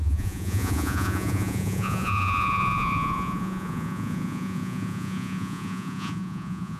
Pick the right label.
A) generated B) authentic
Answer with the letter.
A